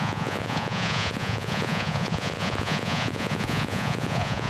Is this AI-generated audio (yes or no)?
yes